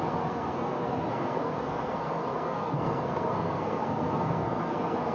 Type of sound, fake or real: fake